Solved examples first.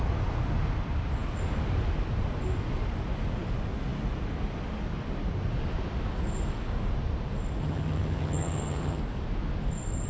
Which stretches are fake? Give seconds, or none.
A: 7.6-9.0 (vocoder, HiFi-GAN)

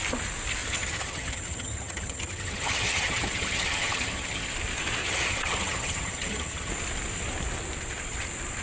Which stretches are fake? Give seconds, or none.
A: 0.6-4.5 (vocoder, HiFi-GAN); 5.0-6.7